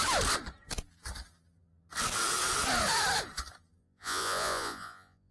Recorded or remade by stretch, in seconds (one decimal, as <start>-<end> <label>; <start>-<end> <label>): 0.0-3.8 recorded; 3.8-5.3 remade

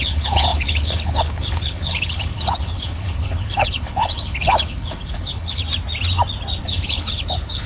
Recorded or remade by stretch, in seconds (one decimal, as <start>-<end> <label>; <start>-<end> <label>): 0.0-5.6 remade; 5.6-6.6 recorded; 6.6-7.7 remade

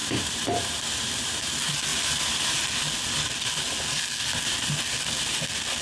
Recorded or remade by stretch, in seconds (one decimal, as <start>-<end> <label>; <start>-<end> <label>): 0.0-1.5 remade; 1.5-1.9 recorded; 1.9-2.8 remade; 2.8-5.8 recorded

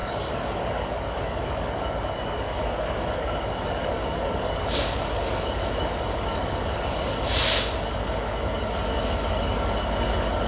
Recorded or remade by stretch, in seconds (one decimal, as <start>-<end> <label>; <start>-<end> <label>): 0.0-10.5 remade